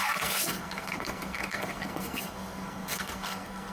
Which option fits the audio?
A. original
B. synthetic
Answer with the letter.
B